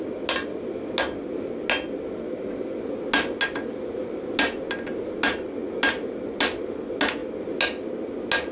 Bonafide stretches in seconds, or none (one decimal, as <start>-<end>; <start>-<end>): 0.0-8.5